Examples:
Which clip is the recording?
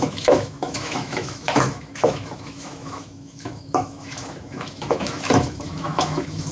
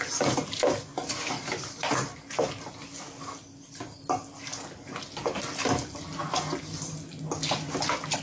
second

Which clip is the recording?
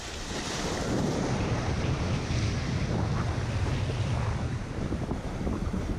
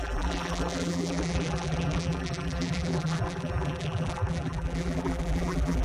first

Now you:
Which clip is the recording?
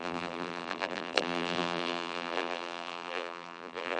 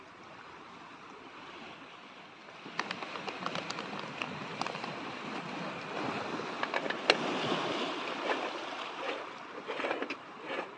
second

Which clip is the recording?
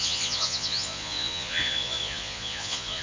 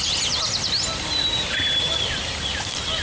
second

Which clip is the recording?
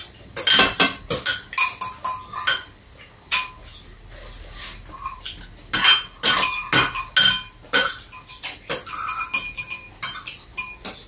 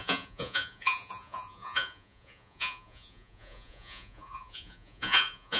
first